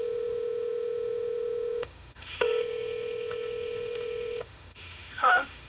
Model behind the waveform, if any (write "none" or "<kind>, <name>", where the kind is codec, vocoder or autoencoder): autoencoder, DAC-VAE